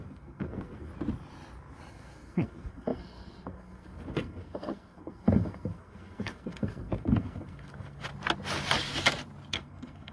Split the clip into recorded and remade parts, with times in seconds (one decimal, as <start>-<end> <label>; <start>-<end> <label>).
0.0-0.9 remade; 0.9-1.9 recorded; 1.9-8.1 remade; 8.1-9.5 recorded; 9.5-10.1 remade